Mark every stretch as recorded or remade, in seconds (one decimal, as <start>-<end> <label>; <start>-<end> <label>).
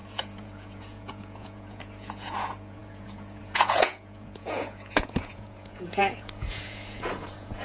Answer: 0.0-7.6 remade